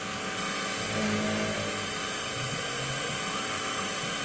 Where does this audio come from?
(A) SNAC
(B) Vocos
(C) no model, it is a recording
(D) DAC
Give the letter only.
C